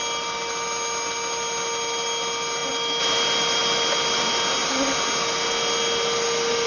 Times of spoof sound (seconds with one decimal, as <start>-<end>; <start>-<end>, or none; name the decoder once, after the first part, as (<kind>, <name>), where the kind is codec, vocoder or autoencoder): none